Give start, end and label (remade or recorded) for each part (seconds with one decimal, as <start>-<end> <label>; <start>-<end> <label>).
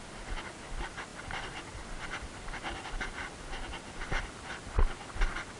0.0-5.6 recorded